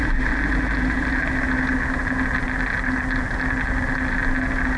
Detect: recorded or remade recorded